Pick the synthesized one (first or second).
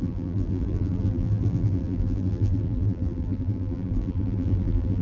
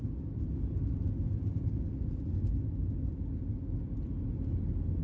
first